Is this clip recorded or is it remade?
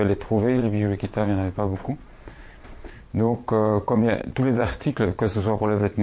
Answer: remade